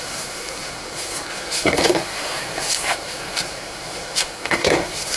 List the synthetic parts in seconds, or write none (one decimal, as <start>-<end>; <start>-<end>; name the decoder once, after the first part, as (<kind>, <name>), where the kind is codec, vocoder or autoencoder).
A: 0.0-5.2 (codec, SNAC)